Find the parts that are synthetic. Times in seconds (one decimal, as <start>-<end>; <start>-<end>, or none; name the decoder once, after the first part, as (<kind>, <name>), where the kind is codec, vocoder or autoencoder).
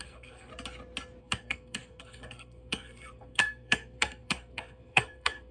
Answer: 0.0-0.5 (codec, SNAC); 1.2-5.5